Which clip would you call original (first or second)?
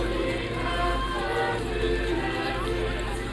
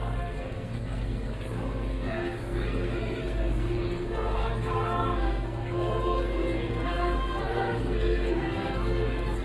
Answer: first